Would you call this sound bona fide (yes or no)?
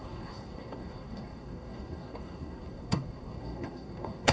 no